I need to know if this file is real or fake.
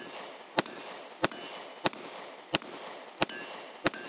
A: real